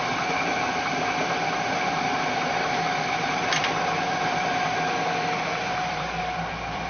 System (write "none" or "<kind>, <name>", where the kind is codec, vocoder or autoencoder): vocoder, BigVGAN v2